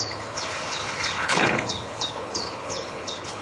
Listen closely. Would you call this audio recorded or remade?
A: remade